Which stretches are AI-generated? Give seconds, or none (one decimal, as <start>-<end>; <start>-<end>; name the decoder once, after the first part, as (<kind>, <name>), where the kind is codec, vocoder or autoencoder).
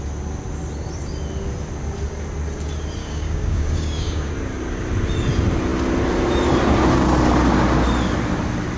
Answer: 3.0-4.3 (codec, DAC)